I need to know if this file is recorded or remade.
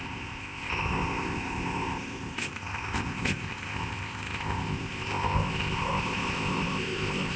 remade